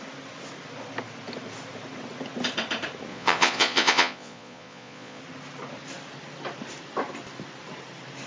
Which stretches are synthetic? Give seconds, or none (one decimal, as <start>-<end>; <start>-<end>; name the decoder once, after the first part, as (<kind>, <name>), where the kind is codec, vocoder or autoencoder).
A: 3.1-5.2 (vocoder, Vocos)